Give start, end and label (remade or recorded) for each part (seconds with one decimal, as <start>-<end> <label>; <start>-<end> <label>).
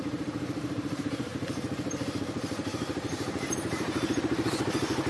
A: 0.0-5.1 remade